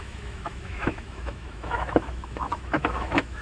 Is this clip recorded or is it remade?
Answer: remade